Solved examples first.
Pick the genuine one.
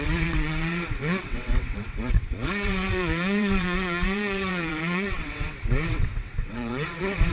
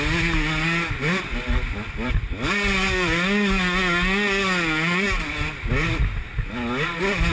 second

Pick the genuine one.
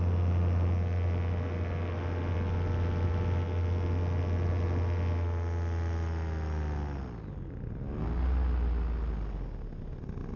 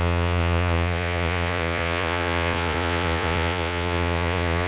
first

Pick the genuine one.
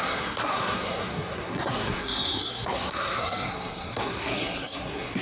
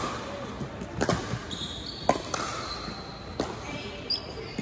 second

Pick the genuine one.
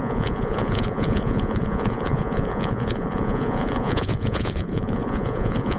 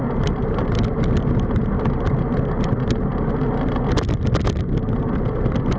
second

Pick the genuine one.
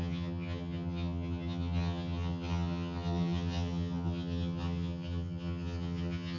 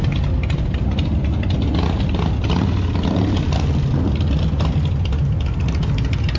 second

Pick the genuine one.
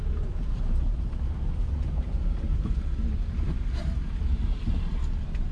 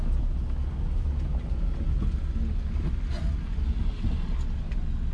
second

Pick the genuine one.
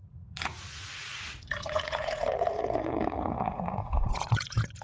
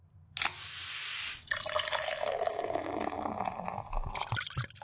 second